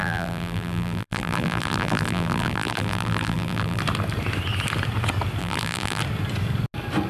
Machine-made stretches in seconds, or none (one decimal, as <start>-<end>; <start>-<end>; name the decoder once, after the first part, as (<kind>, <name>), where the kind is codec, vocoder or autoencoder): 0.0-3.8 (vocoder, BigVGAN v2); 5.4-6.0